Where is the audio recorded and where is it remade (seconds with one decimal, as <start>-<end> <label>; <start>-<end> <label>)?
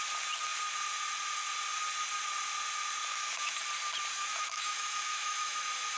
0.0-3.0 recorded; 3.0-3.6 remade; 3.6-4.1 recorded; 4.1-5.6 remade; 5.6-6.0 recorded